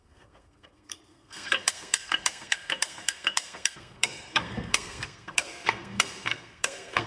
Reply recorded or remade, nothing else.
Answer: remade